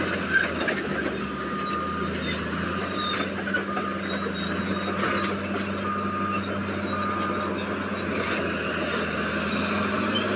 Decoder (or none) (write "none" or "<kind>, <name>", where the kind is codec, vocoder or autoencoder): none